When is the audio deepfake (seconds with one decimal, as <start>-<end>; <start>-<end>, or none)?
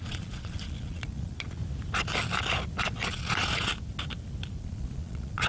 0.0-1.6; 3.1-3.7; 4.6-5.5